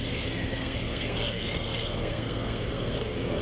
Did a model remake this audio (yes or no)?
yes